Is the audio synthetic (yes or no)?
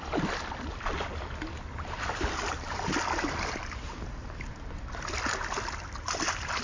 no